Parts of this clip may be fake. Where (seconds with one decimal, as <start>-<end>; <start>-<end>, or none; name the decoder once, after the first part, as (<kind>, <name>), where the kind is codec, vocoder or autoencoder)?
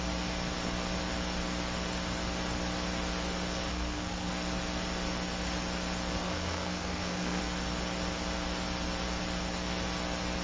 3.7-4.3 (codec, SNAC); 6.2-7.4